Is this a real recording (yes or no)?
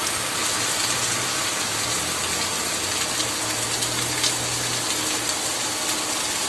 yes